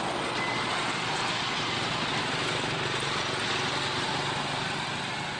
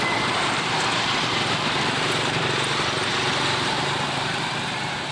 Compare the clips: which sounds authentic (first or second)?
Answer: first